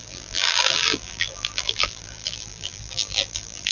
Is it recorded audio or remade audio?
remade